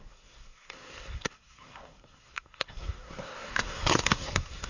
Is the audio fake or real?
fake